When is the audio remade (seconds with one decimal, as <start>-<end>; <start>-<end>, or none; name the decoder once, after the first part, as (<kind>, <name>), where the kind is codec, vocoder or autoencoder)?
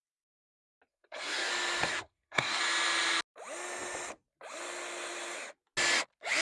0.9-1.5 (codec, SNAC); 1.9-2.6